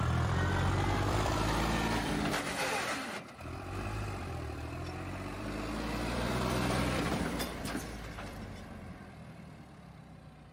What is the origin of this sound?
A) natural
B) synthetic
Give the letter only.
B